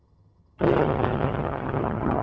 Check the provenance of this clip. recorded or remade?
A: remade